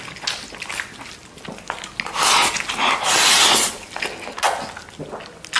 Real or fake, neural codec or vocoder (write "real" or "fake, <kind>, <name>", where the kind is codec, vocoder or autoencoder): real